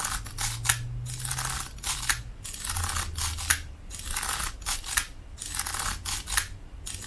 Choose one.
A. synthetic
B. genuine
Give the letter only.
B